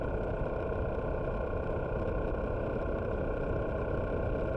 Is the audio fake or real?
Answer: real